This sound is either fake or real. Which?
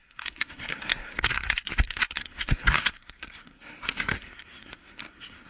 fake